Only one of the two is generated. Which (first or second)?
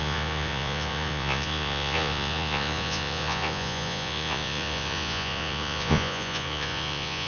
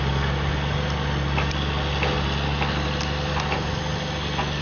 first